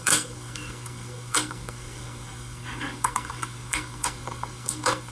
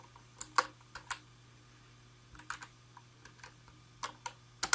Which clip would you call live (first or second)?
second